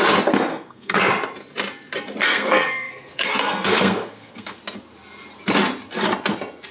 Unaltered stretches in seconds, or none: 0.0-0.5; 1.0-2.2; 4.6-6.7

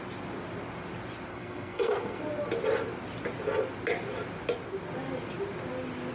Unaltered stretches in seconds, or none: 0.0-1.3; 2.2-6.1

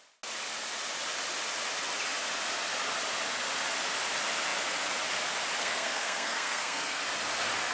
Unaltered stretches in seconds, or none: 0.0-5.6; 7.0-7.7

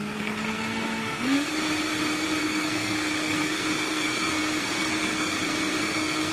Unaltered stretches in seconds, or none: 1.5-2.4

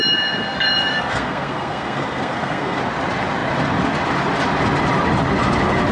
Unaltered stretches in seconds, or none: 0.0-0.9; 2.8-5.9